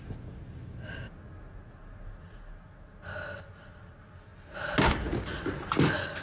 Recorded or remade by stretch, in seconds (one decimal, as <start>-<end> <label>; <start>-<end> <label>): 0.0-6.2 recorded